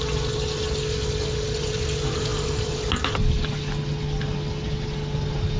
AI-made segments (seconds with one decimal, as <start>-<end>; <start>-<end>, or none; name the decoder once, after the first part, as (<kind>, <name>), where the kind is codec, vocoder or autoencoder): none